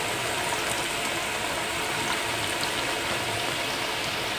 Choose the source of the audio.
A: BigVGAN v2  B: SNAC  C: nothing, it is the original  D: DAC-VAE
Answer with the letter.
C